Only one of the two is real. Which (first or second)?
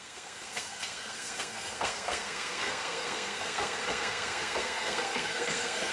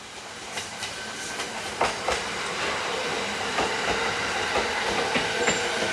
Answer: second